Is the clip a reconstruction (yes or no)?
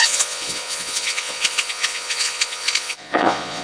yes